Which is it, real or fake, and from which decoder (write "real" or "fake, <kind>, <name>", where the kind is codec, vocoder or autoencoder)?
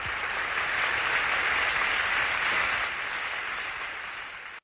real